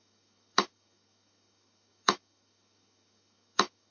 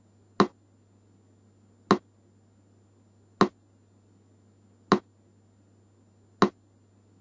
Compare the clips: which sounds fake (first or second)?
first